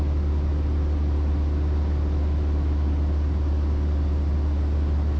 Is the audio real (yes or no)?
yes